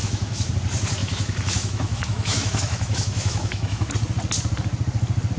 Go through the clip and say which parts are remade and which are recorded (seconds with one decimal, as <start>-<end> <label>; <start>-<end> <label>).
0.0-0.5 remade; 0.5-1.0 recorded; 1.0-3.9 remade; 3.9-5.4 recorded